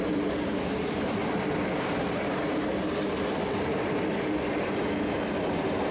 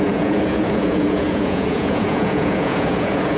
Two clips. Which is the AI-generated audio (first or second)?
second